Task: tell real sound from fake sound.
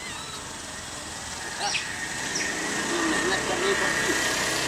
real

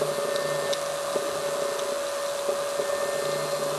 real